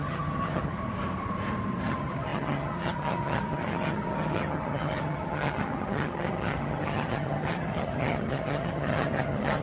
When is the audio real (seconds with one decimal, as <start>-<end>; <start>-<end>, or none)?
0.8-1.8